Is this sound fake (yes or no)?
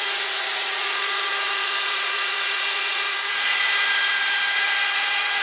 yes